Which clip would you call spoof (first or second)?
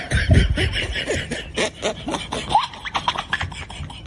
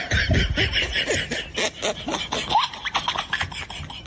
first